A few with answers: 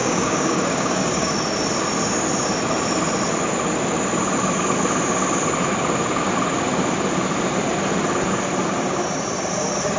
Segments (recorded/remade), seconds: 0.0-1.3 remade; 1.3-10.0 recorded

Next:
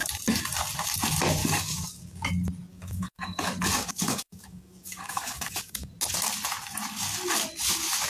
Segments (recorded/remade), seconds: 0.0-1.4 recorded; 1.4-2.3 remade; 2.3-2.7 recorded; 2.7-5.9 remade; 5.9-8.1 recorded

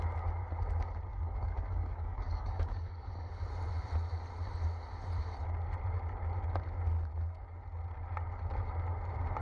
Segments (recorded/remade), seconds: 0.0-1.1 recorded; 1.1-3.1 remade; 3.1-9.4 recorded

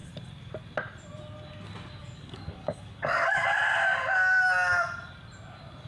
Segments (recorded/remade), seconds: 0.0-2.0 recorded; 2.0-3.4 remade; 3.4-5.9 recorded